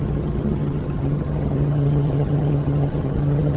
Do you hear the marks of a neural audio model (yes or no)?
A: yes